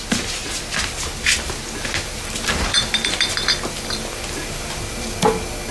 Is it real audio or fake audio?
real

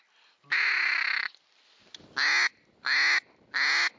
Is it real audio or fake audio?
real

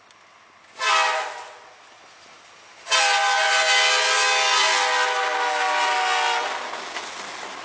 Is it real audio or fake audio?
real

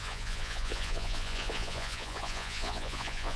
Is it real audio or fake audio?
fake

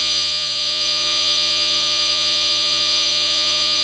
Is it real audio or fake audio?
fake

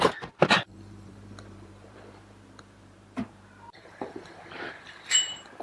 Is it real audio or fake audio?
fake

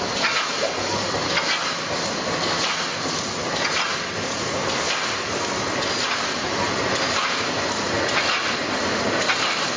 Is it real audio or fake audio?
real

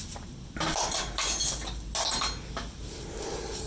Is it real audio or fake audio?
real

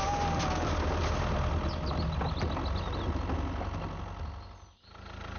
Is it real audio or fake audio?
real